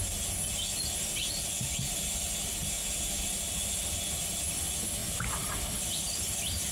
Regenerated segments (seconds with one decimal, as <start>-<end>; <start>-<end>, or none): 2.6-3.4; 5.0-6.7